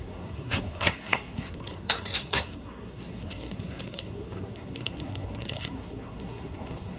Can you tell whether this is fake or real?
fake